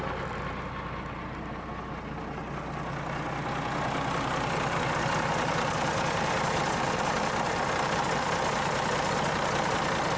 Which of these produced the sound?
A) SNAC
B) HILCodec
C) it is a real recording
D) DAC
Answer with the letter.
C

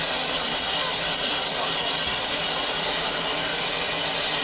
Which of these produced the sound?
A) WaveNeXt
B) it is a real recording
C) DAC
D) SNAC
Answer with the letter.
B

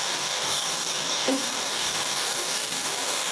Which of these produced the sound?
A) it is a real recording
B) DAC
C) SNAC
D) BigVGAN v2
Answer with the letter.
B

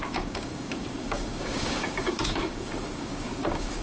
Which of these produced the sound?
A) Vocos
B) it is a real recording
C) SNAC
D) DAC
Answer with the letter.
D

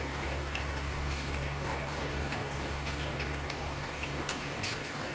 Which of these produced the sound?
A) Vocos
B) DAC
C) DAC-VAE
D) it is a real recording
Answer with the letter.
B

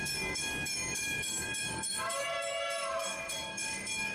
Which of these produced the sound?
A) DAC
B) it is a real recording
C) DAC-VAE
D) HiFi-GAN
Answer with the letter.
A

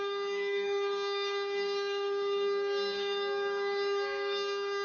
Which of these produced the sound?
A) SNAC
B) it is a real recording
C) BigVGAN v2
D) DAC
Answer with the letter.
D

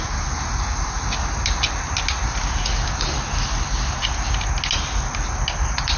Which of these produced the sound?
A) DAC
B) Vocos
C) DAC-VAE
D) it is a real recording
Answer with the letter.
D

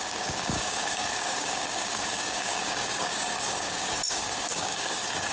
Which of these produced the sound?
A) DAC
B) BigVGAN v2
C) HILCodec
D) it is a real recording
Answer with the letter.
A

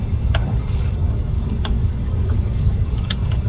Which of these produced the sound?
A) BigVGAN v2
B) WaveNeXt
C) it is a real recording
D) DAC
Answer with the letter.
D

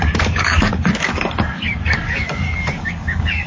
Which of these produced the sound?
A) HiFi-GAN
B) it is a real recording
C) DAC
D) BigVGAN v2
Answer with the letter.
C